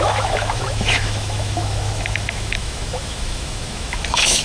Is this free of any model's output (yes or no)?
no